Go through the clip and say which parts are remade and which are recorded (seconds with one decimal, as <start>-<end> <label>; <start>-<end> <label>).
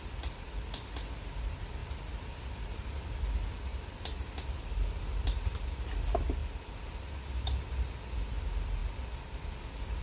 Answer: 0.0-10.0 recorded